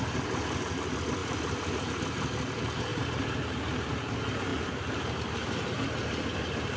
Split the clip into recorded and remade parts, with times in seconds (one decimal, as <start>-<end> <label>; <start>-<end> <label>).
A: 0.0-1.2 recorded; 1.2-2.0 remade; 2.0-2.9 recorded; 2.9-3.9 remade; 3.9-4.5 recorded; 4.5-5.2 remade; 5.2-6.8 recorded